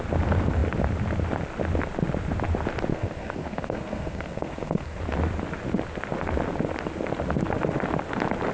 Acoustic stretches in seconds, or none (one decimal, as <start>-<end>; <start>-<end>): 0.0-2.9; 5.0-8.5